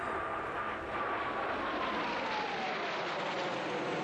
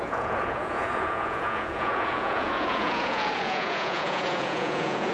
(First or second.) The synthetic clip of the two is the second